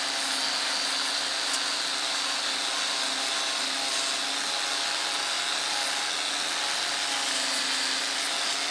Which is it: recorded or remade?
recorded